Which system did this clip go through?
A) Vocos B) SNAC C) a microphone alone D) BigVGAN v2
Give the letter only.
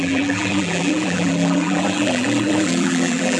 D